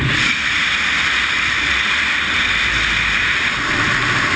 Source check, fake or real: real